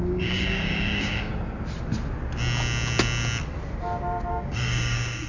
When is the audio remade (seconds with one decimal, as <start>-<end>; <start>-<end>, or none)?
0.0-1.3; 4.3-5.3